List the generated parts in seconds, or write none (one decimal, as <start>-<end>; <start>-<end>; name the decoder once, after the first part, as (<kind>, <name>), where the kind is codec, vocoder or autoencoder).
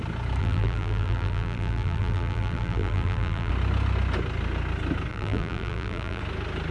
0.4-3.5 (vocoder, BigVGAN v2); 5.1-6.2